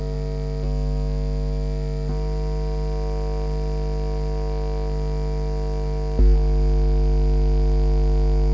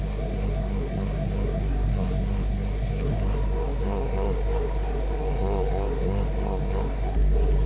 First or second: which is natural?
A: first